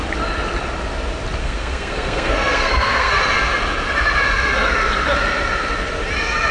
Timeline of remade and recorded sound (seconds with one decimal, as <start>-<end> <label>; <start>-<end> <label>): 0.0-1.4 recorded; 1.4-3.2 remade; 3.2-6.5 recorded